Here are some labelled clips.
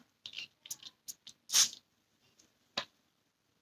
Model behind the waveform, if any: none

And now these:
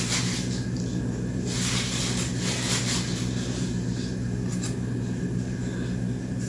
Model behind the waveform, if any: none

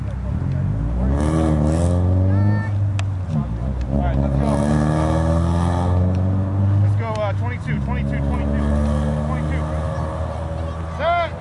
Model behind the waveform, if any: none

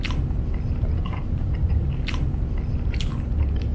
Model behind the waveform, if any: none